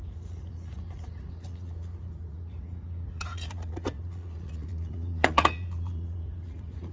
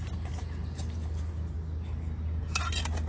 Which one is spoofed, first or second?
first